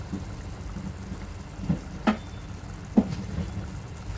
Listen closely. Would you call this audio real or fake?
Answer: real